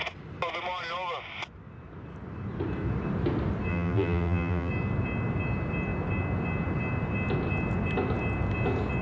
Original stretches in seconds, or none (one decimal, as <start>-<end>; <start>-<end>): 0.0-3.7; 4.7-9.0